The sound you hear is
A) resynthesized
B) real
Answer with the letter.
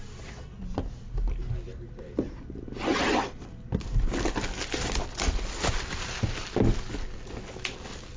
B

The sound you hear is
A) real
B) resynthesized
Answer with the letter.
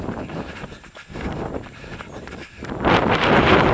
A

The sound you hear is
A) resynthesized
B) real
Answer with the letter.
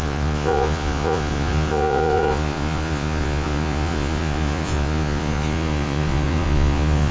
A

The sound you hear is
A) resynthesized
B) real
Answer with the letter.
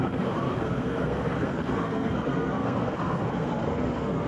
A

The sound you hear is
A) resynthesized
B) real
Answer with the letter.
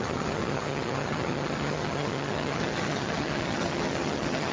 A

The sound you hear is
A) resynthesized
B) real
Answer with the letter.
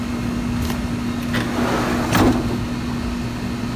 B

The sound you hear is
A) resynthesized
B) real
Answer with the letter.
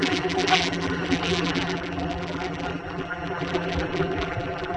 A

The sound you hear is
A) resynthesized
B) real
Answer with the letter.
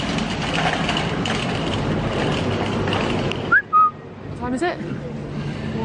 B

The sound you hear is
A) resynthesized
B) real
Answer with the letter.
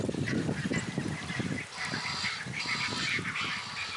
B